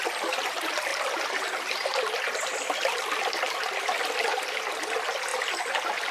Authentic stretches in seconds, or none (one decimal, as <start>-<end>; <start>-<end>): 0.0-0.9; 4.6-6.1